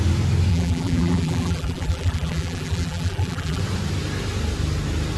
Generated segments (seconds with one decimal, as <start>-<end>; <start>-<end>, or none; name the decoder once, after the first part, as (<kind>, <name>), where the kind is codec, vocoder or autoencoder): 0.5-3.6 (vocoder, BigVGAN v2)